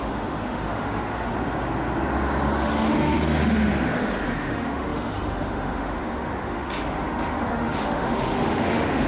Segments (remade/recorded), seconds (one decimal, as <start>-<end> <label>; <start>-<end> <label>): 0.0-1.3 remade; 1.3-2.6 recorded; 2.6-9.1 remade